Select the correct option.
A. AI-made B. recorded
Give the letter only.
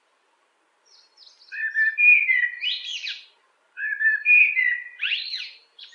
B